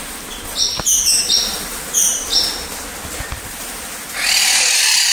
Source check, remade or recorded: recorded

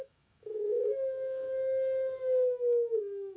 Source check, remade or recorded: remade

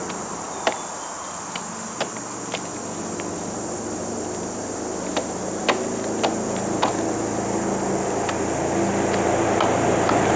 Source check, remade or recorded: recorded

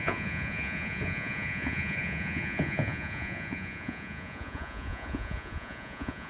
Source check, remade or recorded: remade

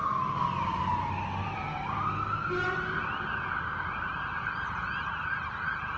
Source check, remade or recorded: recorded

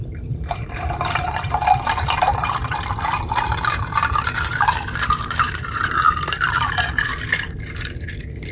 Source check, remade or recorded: remade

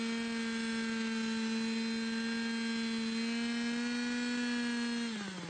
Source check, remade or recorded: recorded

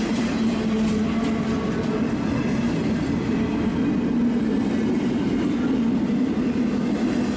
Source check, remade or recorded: recorded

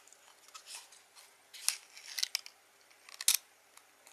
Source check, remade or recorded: recorded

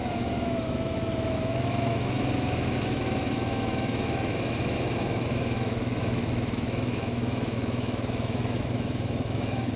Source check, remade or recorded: remade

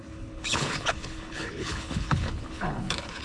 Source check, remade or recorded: remade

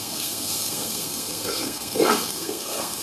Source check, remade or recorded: remade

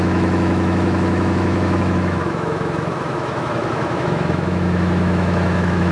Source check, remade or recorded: remade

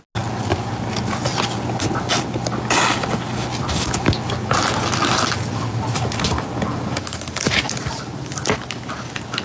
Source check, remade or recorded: recorded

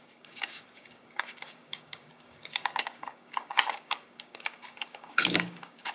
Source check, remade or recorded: remade